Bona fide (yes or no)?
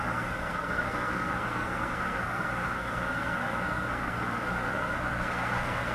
no